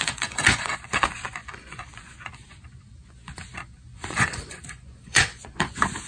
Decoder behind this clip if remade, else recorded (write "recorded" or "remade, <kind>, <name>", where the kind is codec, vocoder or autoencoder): remade, vocoder, Vocos